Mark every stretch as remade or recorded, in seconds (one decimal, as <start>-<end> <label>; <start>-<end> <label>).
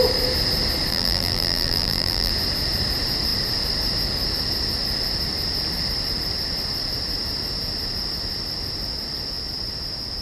0.0-0.9 recorded; 0.9-2.3 remade; 2.3-10.2 recorded